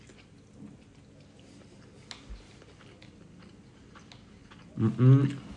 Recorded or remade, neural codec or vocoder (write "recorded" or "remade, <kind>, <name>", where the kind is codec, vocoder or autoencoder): recorded